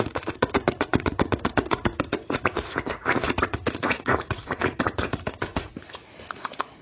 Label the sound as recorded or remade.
remade